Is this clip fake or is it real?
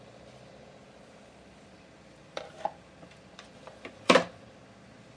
fake